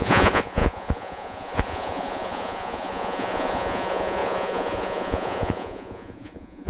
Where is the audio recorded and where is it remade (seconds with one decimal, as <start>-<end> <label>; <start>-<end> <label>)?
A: 0.0-6.7 remade